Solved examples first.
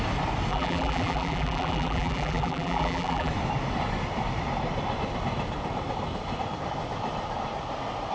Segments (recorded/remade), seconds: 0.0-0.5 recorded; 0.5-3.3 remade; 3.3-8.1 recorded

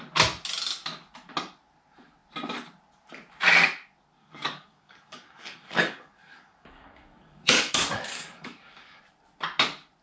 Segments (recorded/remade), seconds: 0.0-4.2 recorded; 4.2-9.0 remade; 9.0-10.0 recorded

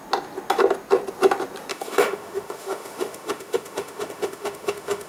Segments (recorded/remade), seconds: 0.0-1.7 recorded; 1.7-5.1 remade